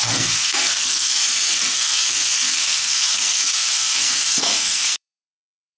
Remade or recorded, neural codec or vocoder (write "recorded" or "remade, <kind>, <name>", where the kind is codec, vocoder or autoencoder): remade, codec, SNAC